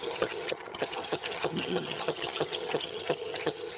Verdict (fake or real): fake